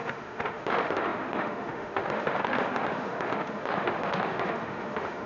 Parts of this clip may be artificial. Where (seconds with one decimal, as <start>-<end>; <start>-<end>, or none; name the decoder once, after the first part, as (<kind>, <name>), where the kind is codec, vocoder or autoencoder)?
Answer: 0.0-5.3 (autoencoder, DAC-VAE)